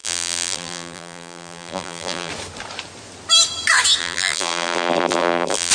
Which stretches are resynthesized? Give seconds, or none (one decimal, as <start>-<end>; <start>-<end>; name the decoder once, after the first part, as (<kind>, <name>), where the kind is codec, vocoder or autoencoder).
0.0-2.3 (vocoder, BigVGAN v2); 4.0-5.7